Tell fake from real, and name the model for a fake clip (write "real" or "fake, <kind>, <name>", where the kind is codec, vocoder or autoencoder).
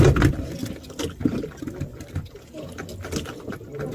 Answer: real